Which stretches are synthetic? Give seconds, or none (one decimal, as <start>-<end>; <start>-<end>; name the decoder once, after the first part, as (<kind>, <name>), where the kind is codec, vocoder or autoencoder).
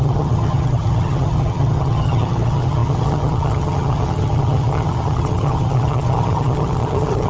0.0-7.3 (vocoder, HiFi-GAN)